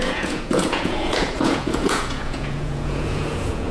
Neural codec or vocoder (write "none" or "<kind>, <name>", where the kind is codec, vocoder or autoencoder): vocoder, Vocos